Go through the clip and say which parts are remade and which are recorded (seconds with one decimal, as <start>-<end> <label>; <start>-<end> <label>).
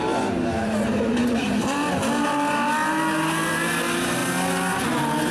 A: 0.0-5.3 recorded